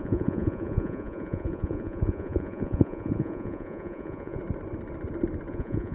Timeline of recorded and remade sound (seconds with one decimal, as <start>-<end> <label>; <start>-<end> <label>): 0.0-4.4 remade; 4.4-5.5 recorded; 5.5-5.9 remade